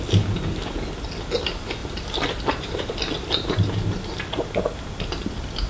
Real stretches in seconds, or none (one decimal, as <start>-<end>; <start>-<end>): 0.0-5.7